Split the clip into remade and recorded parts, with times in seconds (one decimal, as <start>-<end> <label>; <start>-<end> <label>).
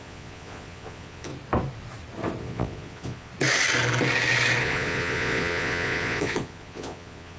0.0-1.3 remade; 1.3-2.4 recorded; 2.4-3.3 remade; 3.3-4.6 recorded; 4.6-7.4 remade